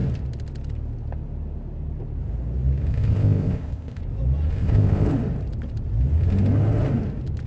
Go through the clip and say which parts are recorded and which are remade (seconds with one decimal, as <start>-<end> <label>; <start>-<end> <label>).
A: 0.0-2.9 recorded; 2.9-4.0 remade; 4.0-4.5 recorded; 4.5-5.1 remade; 5.1-7.5 recorded